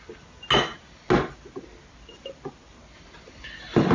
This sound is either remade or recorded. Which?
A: recorded